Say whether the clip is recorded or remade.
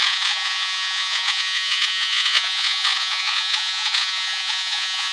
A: remade